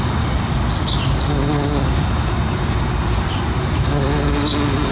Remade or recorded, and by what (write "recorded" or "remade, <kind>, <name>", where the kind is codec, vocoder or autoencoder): recorded